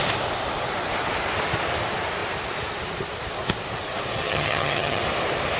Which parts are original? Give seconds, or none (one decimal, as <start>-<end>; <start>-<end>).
0.0-4.2; 5.0-5.6